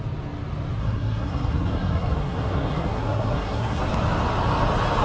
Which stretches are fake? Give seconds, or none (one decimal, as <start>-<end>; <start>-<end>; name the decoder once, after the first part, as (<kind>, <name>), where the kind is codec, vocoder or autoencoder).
0.8-3.8 (codec, SNAC)